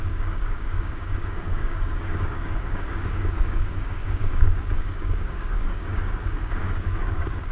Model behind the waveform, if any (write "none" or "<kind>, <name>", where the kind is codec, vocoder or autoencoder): codec, DAC